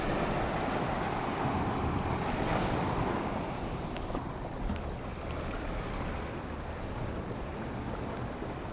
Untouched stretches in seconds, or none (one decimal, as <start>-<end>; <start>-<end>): 0.0-8.7